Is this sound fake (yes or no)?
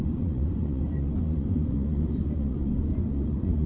yes